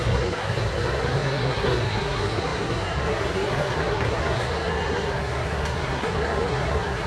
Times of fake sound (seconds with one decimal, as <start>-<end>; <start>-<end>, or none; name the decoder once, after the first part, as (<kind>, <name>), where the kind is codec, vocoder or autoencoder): 0.0-7.1 (codec, SNAC)